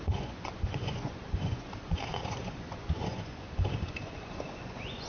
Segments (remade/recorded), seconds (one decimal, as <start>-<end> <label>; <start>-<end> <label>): 0.0-5.1 remade